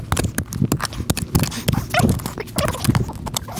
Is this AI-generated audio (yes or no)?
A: no